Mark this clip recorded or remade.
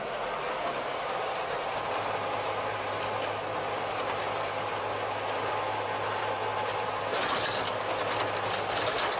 recorded